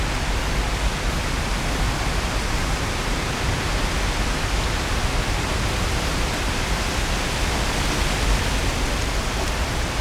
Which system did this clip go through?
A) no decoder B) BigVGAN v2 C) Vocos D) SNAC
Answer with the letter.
A